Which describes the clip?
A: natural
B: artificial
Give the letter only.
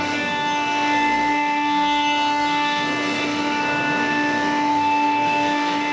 B